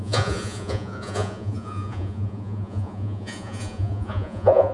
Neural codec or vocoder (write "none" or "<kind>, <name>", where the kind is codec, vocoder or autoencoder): vocoder, Vocos